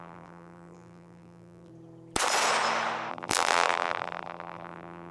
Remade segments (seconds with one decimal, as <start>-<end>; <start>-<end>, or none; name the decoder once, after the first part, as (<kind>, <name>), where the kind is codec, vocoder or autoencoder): 0.0-1.7 (vocoder, BigVGAN v2); 3.1-5.1